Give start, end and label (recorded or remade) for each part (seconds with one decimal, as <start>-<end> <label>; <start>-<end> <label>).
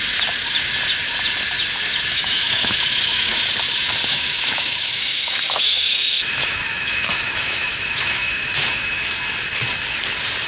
0.0-2.1 recorded; 2.1-3.5 remade; 3.5-4.1 recorded; 4.1-9.1 remade; 9.1-10.5 recorded